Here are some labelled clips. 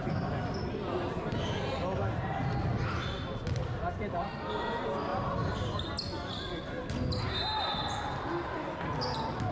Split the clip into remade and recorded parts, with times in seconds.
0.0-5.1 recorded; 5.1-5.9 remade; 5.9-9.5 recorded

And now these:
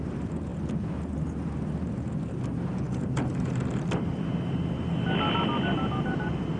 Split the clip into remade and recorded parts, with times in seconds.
0.0-6.6 recorded

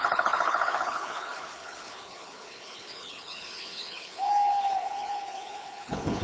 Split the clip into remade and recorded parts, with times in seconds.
0.0-6.2 remade